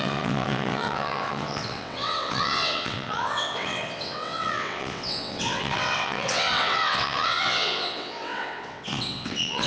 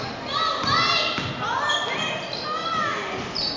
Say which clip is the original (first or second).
second